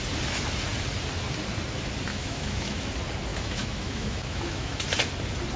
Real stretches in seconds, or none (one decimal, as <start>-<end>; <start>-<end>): 0.0-2.1; 2.8-3.3; 4.8-5.6